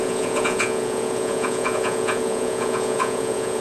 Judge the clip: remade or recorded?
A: remade